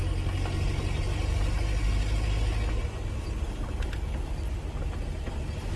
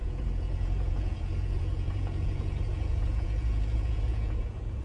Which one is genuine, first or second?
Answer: first